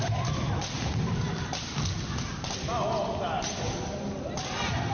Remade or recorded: recorded